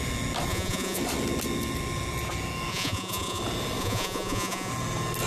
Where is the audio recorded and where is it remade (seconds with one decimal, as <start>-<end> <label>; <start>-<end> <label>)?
0.0-0.5 recorded; 0.5-1.0 remade; 1.0-2.7 recorded; 2.7-3.4 remade; 3.4-3.8 recorded; 3.8-4.7 remade; 4.7-5.3 recorded